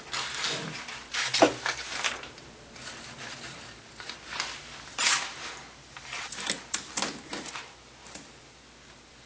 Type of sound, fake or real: real